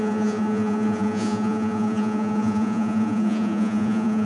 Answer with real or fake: fake